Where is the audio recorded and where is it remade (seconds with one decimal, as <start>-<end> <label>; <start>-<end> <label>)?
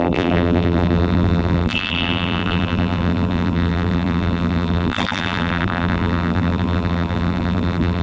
0.0-8.0 remade